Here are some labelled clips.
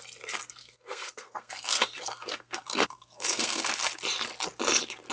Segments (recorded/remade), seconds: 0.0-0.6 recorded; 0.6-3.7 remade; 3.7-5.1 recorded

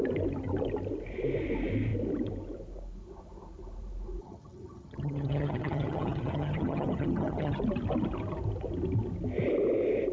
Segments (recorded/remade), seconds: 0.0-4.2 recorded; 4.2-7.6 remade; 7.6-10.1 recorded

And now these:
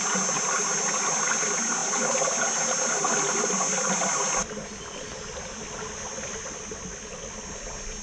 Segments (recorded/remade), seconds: 0.0-8.0 recorded

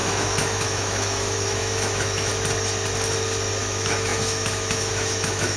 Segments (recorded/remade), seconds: 0.0-2.3 remade; 2.3-3.6 recorded; 3.6-5.6 remade

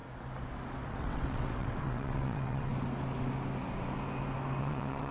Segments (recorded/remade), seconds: 0.0-0.9 recorded; 0.9-2.7 remade; 2.7-4.6 recorded; 4.6-5.1 remade